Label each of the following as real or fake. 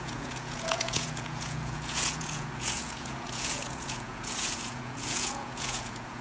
fake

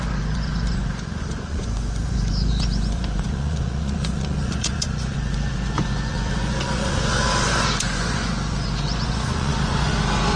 fake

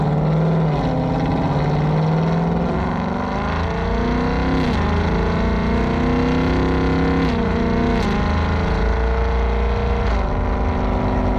real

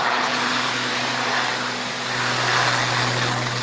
real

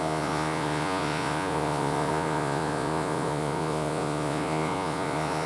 fake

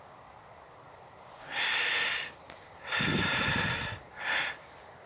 real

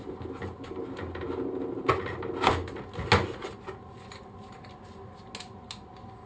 real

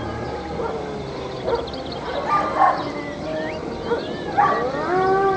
real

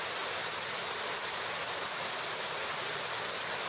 real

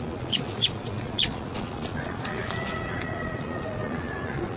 fake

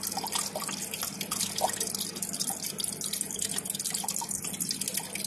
real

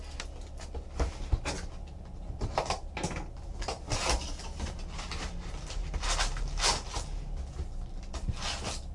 real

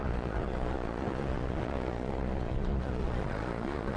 fake